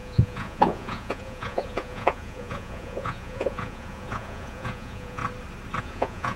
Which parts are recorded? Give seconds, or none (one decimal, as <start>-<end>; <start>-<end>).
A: 5.2-5.8